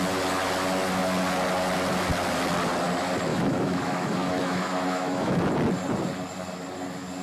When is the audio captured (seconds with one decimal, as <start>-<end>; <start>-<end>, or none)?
0.0-3.3; 5.4-7.2